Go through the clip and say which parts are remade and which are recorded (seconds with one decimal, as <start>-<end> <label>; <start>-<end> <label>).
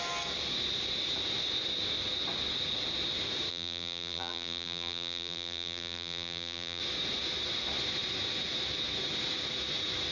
0.0-3.5 recorded; 3.5-6.8 remade; 6.8-10.1 recorded